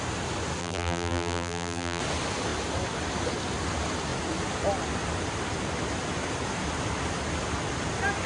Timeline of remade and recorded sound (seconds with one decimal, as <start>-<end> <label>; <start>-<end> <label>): 0.0-0.6 recorded; 0.6-2.0 remade; 2.0-8.3 recorded